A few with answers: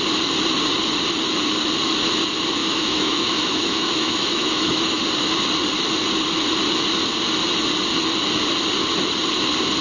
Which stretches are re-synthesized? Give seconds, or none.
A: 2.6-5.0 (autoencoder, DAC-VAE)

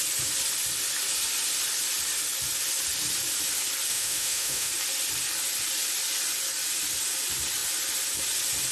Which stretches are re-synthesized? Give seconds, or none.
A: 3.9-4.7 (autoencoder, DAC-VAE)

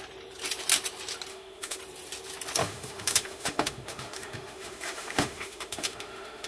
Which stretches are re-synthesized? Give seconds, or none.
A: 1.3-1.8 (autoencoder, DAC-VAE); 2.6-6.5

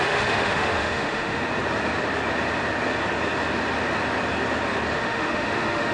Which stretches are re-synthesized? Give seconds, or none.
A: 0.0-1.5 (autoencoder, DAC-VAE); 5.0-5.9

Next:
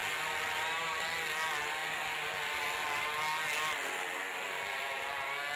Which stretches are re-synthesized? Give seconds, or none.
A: none

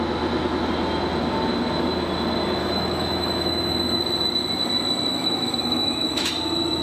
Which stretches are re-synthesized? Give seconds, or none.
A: 2.6-4.0 (autoencoder, DAC-VAE); 5.1-6.3